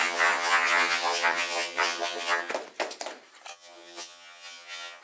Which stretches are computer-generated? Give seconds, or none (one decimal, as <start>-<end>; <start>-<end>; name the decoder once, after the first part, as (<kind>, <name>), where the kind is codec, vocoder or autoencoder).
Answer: 0.0-2.5 (vocoder, HiFi-GAN); 3.5-5.0